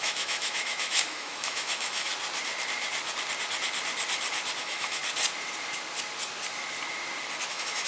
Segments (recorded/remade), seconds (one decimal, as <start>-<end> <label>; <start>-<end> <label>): 0.0-2.1 remade; 2.1-4.6 recorded; 4.6-5.0 remade; 5.0-7.5 recorded; 7.5-7.9 remade